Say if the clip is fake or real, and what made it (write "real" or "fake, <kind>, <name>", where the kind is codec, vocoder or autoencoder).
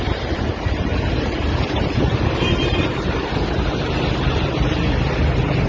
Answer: fake, vocoder, BigVGAN v2